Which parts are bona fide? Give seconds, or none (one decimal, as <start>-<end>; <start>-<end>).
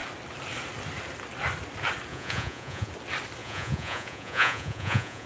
0.0-2.1; 2.9-3.4